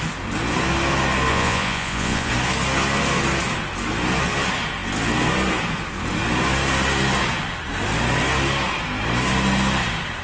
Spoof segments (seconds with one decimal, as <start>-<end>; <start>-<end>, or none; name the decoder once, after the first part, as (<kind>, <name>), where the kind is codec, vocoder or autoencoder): 1.3-2.3 (vocoder, Vocos)